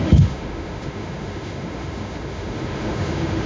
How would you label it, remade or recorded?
remade